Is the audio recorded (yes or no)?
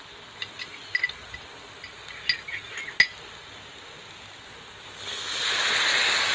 yes